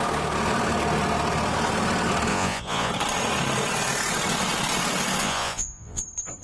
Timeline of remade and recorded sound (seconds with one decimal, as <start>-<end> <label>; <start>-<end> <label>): 0.0-2.3 recorded; 2.3-2.9 remade; 2.9-5.2 recorded; 5.2-6.0 remade; 6.0-6.4 recorded